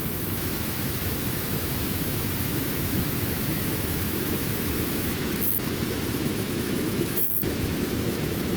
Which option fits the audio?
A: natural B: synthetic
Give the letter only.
B